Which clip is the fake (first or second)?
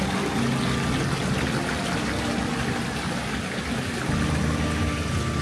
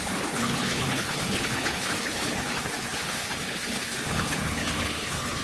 second